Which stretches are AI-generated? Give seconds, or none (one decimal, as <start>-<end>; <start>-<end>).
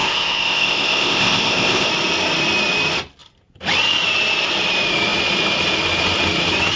0.0-1.9